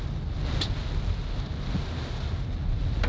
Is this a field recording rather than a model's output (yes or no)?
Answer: yes